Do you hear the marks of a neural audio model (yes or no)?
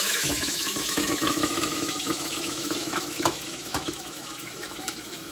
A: yes